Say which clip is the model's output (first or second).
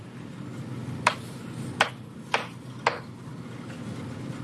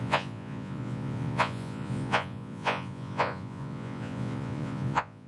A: second